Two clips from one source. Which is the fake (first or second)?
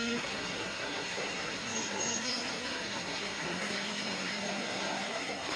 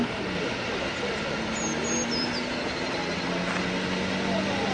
first